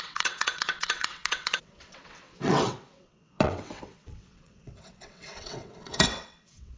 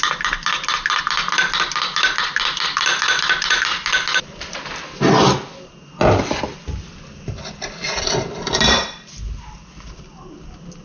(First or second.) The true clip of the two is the second